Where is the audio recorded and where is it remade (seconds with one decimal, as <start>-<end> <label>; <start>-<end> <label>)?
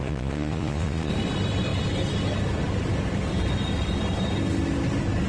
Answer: 0.0-1.1 remade; 1.1-5.3 recorded